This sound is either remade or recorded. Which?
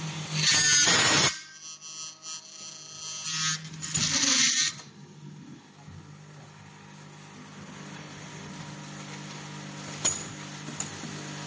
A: recorded